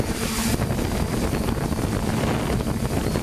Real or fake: real